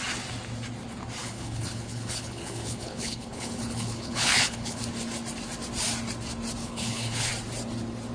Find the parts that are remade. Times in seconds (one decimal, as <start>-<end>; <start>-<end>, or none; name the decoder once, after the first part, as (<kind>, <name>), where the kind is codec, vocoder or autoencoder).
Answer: 1.2-4.8 (codec, HILCodec); 6.6-7.3